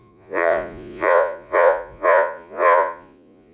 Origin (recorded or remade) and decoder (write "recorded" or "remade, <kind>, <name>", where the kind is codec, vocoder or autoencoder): remade, vocoder, Vocos